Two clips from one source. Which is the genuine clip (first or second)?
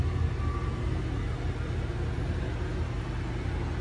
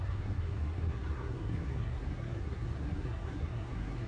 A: first